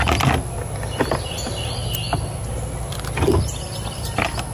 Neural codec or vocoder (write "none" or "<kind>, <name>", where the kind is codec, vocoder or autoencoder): none